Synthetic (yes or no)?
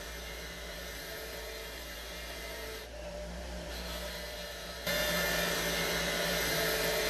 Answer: yes